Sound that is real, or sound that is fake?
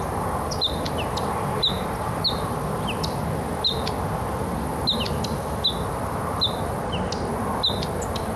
real